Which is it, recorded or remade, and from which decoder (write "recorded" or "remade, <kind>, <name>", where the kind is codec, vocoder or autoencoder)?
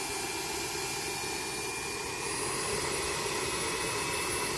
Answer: recorded